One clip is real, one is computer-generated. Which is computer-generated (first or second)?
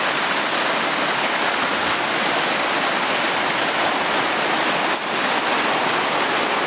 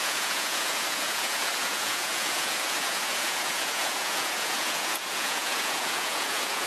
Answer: second